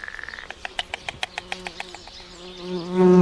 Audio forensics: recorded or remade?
recorded